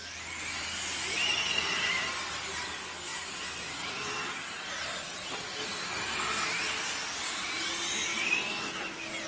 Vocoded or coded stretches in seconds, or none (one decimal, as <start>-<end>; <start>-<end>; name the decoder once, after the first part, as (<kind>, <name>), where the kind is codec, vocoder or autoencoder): none